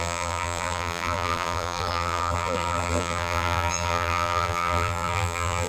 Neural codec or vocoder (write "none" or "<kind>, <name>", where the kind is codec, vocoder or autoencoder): vocoder, BigVGAN v2